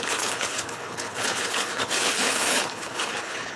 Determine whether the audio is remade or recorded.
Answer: remade